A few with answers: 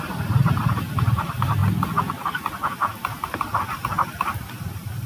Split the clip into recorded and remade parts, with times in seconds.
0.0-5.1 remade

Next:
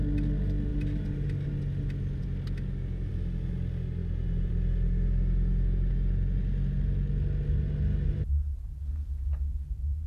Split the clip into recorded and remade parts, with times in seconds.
0.0-4.0 recorded; 4.0-4.5 remade; 4.5-10.1 recorded

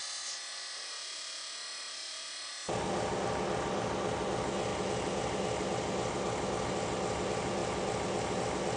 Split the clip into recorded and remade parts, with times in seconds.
0.0-0.9 remade; 0.9-8.8 recorded

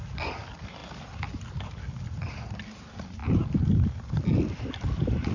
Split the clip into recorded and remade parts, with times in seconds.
0.0-5.3 recorded